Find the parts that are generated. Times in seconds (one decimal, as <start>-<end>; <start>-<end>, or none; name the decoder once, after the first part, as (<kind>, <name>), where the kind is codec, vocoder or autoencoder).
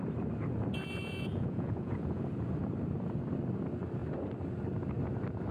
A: 1.0-2.2 (vocoder, Vocos)